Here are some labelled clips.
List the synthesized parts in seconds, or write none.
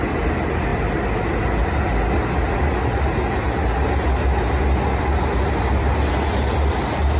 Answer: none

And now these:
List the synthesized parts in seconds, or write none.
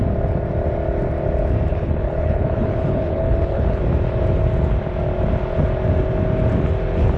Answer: 1.7-3.8 (codec, HILCodec)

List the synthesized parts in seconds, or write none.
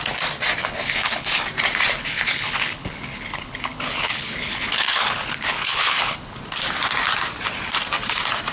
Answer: 0.6-1.4 (codec, HILCodec); 2.0-6.4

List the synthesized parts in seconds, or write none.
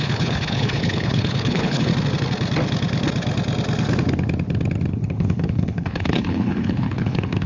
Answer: 0.0-1.9 (codec, HILCodec); 4.9-7.5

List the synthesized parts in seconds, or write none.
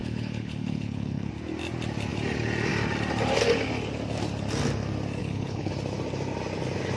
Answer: 0.0-1.3 (codec, HILCodec); 5.2-5.7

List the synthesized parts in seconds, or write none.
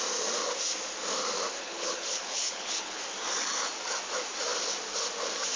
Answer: 1.6-3.0 (codec, HILCodec)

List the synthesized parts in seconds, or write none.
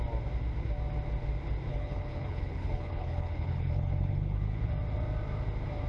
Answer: 1.7-4.7 (codec, HILCodec)